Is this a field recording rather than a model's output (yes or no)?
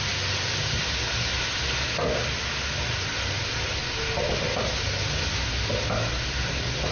yes